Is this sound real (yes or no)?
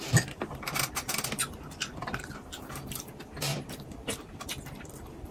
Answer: no